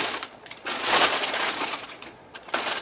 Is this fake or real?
fake